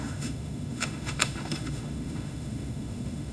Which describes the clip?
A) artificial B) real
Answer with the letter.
A